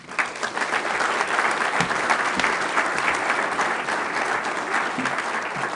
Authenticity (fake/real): real